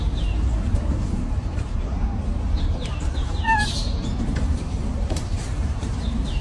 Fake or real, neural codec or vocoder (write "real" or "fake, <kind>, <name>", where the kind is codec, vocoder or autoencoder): fake, vocoder, BigVGAN v2